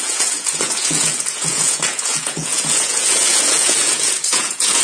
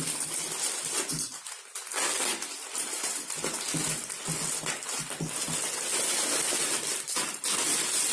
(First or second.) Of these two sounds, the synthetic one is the first